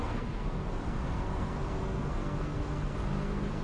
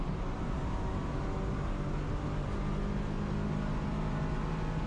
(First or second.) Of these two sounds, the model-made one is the first